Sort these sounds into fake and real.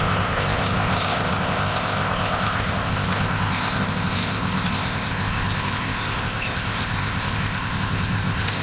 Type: fake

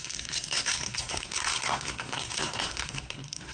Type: fake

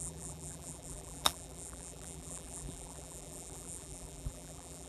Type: fake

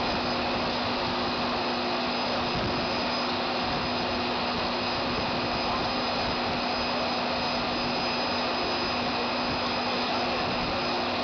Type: real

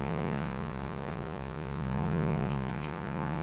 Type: fake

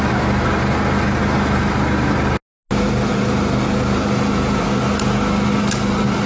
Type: real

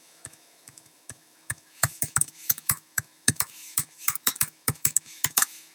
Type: fake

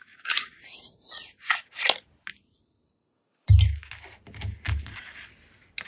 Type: real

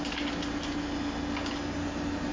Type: real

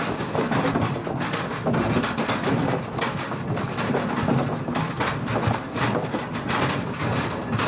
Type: real